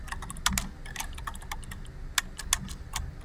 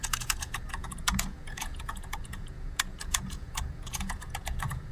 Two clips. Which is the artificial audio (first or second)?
second